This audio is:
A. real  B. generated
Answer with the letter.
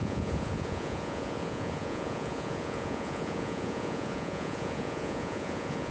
B